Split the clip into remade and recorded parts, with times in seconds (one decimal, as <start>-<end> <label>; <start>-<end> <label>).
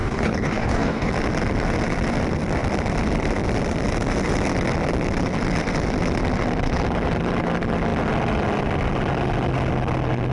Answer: 0.0-1.1 remade; 1.1-10.3 recorded